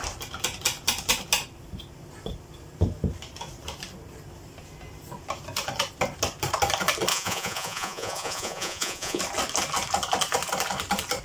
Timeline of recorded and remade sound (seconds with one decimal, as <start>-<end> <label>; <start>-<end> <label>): 0.0-7.1 recorded; 7.1-9.2 remade; 9.2-11.2 recorded